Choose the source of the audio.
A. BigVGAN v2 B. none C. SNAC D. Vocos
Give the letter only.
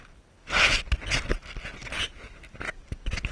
B